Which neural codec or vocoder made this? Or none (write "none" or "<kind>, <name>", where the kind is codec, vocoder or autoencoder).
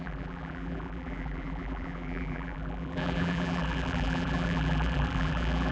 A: vocoder, BigVGAN v2